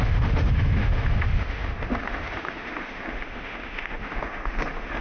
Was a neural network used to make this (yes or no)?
yes